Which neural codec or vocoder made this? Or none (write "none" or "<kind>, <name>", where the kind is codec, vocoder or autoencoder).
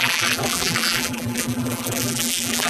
vocoder, BigVGAN v2